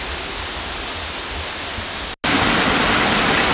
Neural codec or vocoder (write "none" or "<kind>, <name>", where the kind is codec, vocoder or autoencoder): none